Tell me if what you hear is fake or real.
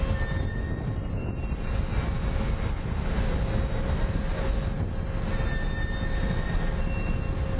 real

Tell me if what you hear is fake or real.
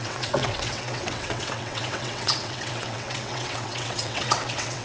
fake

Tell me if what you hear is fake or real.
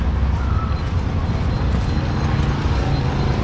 real